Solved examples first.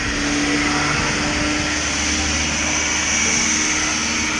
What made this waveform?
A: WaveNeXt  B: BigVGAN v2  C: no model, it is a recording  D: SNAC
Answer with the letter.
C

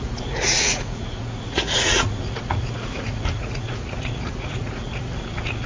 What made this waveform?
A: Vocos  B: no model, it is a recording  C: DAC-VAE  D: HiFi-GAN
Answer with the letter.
A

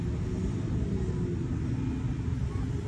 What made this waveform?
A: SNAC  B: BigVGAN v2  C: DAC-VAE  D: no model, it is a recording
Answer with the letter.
D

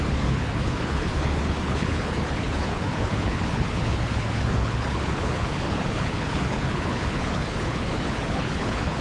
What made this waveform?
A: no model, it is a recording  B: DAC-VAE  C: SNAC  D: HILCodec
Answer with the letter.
D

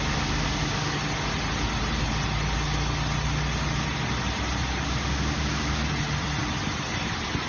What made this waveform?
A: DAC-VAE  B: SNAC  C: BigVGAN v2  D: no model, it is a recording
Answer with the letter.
D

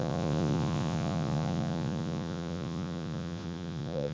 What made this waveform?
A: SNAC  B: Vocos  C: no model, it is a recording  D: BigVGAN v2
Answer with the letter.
B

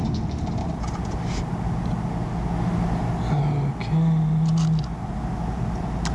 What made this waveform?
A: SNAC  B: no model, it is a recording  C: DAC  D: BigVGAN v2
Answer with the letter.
B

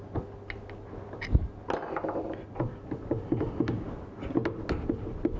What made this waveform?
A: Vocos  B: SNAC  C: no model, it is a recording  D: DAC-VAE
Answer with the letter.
C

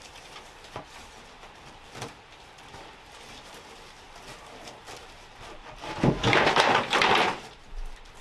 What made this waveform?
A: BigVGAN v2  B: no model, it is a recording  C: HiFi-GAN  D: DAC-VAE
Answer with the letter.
A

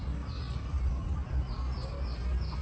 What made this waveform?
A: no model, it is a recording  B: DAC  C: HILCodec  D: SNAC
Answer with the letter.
A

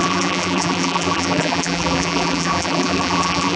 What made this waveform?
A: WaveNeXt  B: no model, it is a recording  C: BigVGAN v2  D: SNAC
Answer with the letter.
C